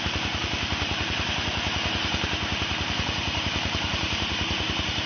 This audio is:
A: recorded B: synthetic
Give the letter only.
B